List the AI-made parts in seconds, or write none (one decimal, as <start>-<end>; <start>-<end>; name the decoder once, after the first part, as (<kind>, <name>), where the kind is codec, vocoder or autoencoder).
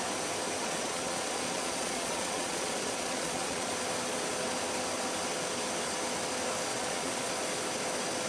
0.6-3.7 (vocoder, Vocos); 6.7-7.3